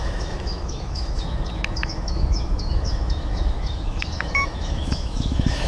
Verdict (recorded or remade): remade